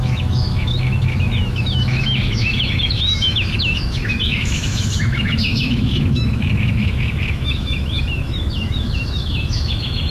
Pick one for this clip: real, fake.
fake